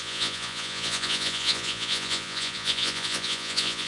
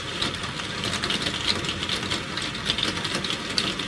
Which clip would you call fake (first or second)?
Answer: first